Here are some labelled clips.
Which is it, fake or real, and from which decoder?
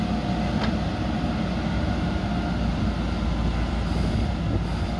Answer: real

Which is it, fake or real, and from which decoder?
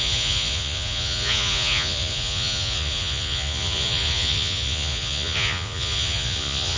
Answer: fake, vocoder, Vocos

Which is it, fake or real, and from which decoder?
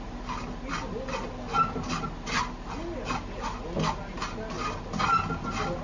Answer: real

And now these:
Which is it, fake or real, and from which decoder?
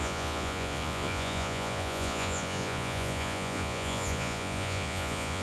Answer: fake, vocoder, Vocos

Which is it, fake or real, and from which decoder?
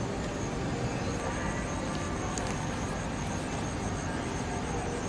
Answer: real